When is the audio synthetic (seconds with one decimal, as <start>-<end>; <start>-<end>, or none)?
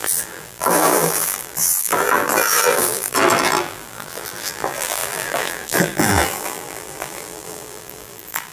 0.0-8.5